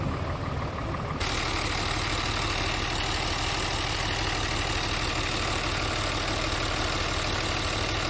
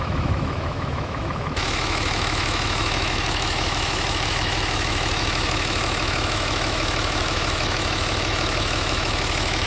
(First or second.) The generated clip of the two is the second